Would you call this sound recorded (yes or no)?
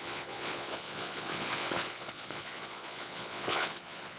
no